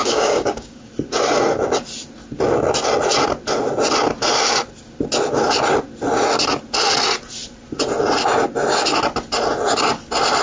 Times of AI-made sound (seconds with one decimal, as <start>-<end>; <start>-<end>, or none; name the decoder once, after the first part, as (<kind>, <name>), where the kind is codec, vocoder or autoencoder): 0.0-0.9 (codec, DAC)